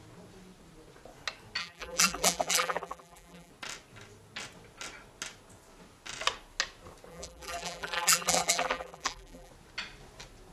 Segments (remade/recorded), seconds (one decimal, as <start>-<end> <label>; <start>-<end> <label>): 0.0-1.6 recorded; 1.6-3.5 remade; 3.5-7.1 recorded; 7.1-9.5 remade; 9.5-10.5 recorded